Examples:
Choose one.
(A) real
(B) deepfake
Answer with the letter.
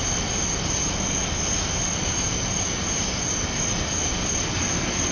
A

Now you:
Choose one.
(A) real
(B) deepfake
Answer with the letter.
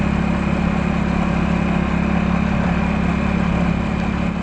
A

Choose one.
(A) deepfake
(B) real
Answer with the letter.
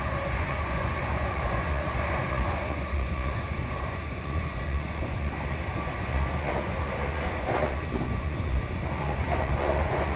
A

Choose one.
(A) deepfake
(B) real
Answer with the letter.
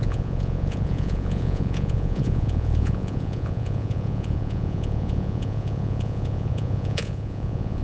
A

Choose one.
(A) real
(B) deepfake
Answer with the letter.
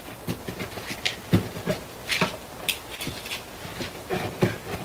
A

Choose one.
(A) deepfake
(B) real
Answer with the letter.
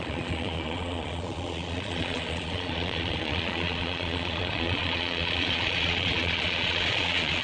A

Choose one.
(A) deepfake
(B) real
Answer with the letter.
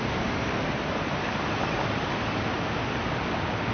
B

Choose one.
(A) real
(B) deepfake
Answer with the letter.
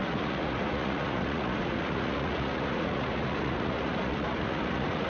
B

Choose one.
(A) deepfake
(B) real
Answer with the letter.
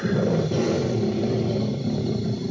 B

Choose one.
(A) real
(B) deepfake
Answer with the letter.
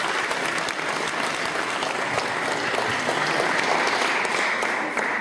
A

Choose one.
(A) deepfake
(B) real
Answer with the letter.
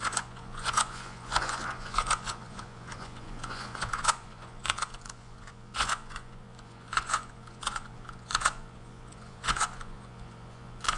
A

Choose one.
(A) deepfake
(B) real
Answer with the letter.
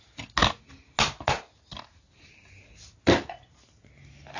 B